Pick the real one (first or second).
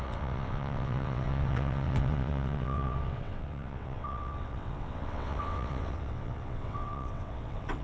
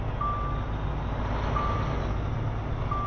second